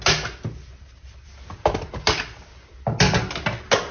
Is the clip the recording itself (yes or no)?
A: yes